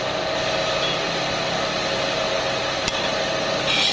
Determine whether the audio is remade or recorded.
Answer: recorded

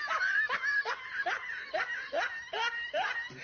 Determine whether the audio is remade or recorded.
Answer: recorded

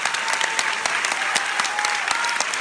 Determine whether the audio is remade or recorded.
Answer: recorded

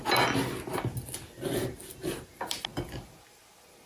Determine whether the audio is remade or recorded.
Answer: recorded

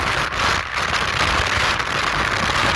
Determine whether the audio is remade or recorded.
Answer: recorded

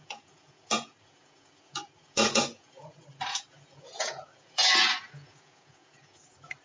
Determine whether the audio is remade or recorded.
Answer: remade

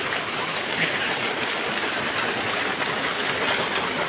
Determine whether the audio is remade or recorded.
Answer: recorded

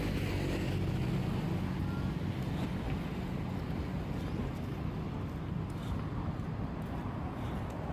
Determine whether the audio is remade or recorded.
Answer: recorded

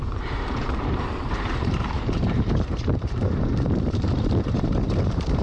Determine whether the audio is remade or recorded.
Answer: remade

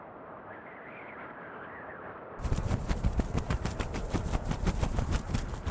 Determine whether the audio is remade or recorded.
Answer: remade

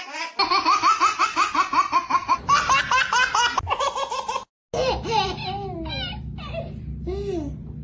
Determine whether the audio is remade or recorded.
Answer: recorded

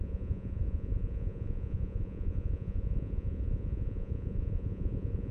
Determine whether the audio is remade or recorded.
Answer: remade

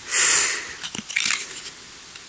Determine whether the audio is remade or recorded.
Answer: remade